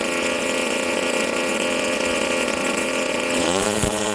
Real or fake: fake